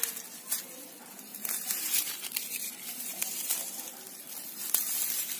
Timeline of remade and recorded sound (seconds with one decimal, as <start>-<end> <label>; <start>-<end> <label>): 0.0-5.4 recorded